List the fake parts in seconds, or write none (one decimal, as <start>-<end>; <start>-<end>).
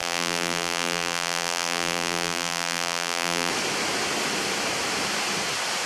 0.0-3.5